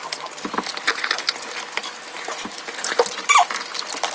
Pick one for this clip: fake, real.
real